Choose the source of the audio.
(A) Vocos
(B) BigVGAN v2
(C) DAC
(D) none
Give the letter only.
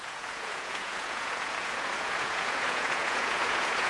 A